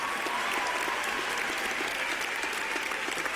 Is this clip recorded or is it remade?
recorded